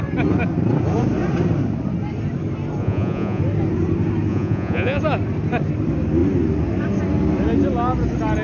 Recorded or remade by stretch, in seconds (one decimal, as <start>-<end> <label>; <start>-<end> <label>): 0.0-2.8 recorded; 2.8-3.4 remade; 3.4-4.3 recorded; 4.3-5.0 remade; 5.0-8.4 recorded